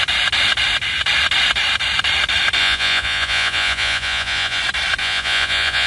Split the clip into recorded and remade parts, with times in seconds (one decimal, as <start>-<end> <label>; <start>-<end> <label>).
0.0-2.6 recorded; 2.6-4.6 remade; 4.6-5.0 recorded; 5.0-5.9 remade